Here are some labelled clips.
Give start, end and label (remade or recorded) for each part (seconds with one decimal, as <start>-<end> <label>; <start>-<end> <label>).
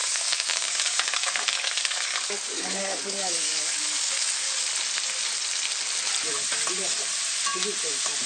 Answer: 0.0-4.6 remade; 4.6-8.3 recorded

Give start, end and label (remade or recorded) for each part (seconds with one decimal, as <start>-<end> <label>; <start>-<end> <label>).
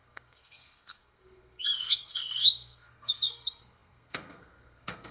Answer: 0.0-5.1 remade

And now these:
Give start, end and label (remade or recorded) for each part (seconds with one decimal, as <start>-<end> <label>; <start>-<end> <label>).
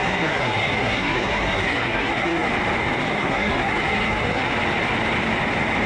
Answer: 0.0-2.5 remade; 2.5-3.0 recorded; 3.0-4.5 remade; 4.5-5.9 recorded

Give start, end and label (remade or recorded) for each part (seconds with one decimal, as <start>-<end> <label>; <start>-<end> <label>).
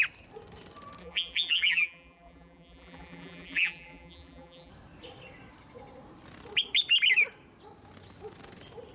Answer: 0.0-1.0 recorded; 1.0-4.7 remade; 4.7-8.9 recorded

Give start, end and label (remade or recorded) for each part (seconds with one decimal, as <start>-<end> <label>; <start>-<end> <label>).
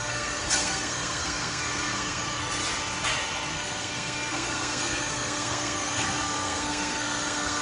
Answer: 0.0-2.6 remade; 2.6-3.5 recorded; 3.5-7.6 remade